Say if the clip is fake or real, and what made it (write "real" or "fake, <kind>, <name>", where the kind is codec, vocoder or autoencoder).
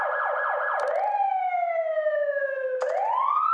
real